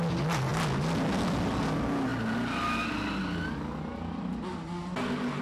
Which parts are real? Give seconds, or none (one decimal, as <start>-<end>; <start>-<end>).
0.0-5.4